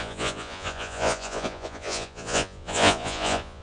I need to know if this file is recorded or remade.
remade